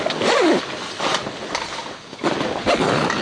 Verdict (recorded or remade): recorded